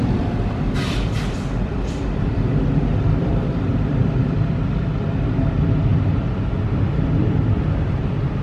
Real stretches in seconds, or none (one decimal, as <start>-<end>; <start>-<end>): 4.5-5.9; 6.4-8.4